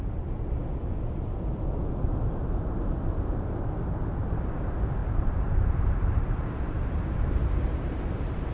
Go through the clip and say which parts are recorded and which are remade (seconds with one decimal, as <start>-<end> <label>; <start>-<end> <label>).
0.0-5.0 recorded; 5.0-7.3 remade; 7.3-8.5 recorded